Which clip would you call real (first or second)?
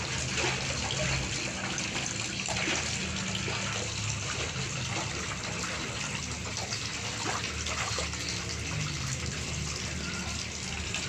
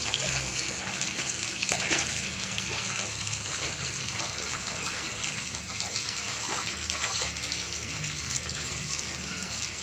first